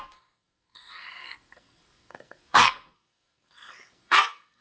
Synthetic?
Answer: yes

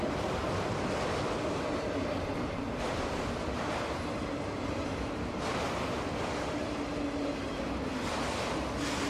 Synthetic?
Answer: no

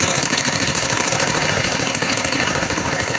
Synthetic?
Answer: yes